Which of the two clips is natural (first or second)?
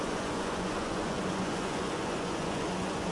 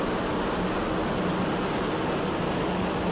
second